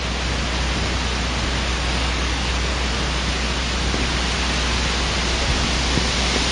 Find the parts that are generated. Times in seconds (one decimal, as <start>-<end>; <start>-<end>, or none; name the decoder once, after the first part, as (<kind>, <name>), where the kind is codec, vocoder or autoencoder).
1.7-2.5 (codec, DAC)